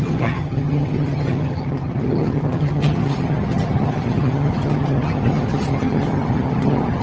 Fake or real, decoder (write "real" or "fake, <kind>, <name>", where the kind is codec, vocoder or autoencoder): fake, vocoder, HiFi-GAN